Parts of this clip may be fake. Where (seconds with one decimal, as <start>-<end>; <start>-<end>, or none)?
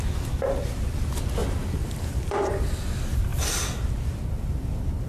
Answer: 1.4-2.5